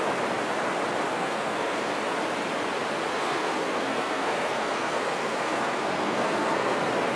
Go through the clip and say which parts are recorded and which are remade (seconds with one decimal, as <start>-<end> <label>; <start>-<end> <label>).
0.0-1.1 recorded; 1.1-1.9 remade; 1.9-3.1 recorded; 3.1-6.8 remade; 6.8-7.2 recorded